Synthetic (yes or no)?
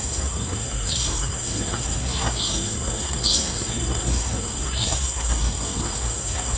yes